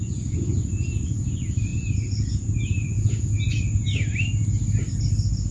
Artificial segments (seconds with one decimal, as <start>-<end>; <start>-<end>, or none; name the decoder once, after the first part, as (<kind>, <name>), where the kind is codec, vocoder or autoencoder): none